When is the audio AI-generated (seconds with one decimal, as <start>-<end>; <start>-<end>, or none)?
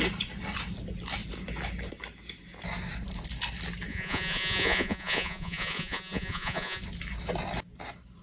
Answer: 3.9-6.8